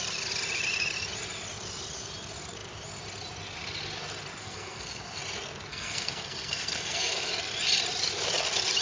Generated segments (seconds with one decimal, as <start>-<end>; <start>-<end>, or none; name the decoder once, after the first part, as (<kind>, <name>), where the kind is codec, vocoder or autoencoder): 4.4-5.2 (codec, SNAC); 5.7-7.3